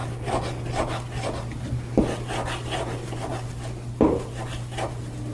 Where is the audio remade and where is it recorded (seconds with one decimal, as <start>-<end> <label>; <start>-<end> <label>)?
0.0-5.3 recorded